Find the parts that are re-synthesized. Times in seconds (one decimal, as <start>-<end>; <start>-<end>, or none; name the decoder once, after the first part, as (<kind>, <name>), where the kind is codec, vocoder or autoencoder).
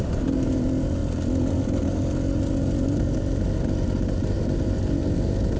0.0-1.0 (vocoder, BigVGAN v2); 2.5-5.6